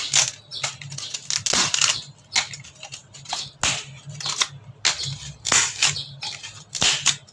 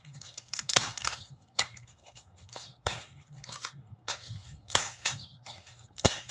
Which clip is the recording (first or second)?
first